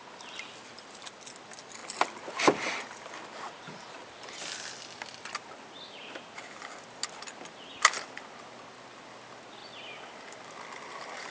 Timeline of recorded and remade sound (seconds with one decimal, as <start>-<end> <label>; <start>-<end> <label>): 0.0-11.3 recorded